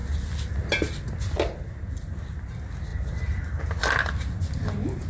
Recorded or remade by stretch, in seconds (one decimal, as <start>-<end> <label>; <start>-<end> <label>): 0.0-2.9 recorded; 2.9-3.6 remade; 3.6-5.1 recorded